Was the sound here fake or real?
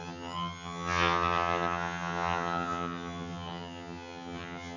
fake